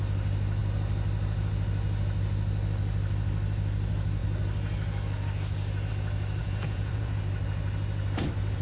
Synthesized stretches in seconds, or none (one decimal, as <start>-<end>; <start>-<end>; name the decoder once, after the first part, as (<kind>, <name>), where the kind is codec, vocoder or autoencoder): 6.4-7.2 (vocoder, Vocos)